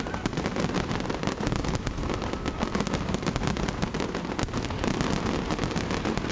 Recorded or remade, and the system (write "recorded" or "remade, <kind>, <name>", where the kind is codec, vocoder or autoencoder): recorded